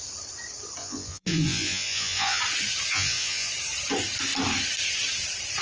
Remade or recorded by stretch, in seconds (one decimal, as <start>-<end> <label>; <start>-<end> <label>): 0.0-0.8 recorded; 0.8-2.4 remade; 2.4-2.9 recorded; 2.9-3.5 remade; 3.5-5.6 recorded